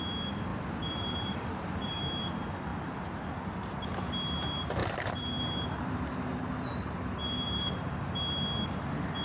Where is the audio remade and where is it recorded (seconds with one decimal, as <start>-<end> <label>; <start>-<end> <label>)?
0.0-0.5 recorded; 0.5-2.0 remade; 2.0-4.8 recorded; 4.8-7.9 remade; 7.9-9.2 recorded